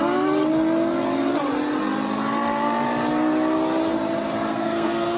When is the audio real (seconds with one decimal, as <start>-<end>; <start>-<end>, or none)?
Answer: 0.0-4.5